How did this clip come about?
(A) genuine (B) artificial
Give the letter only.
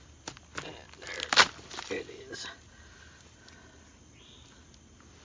A